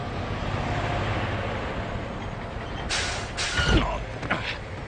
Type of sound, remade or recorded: recorded